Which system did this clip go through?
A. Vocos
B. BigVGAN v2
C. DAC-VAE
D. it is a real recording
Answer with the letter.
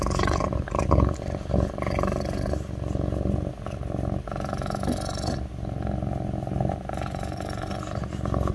D